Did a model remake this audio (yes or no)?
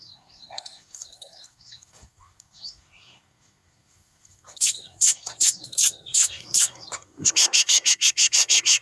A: yes